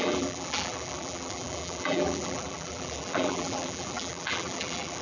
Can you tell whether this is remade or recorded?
remade